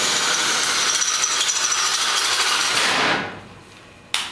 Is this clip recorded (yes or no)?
yes